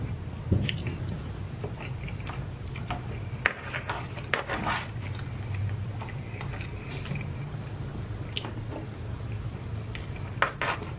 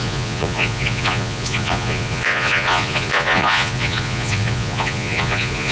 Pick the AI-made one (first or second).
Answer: second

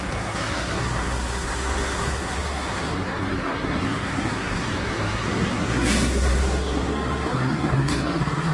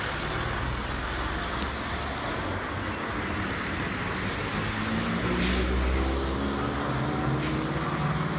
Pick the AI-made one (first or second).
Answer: first